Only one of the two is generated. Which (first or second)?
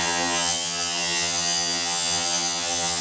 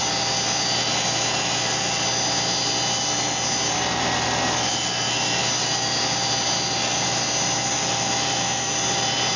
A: first